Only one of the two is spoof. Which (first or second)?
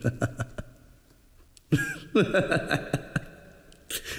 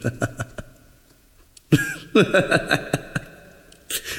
second